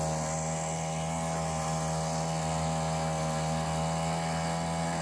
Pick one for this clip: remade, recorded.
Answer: recorded